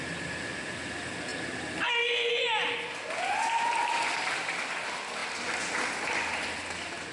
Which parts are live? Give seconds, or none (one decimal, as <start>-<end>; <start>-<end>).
0.0-7.1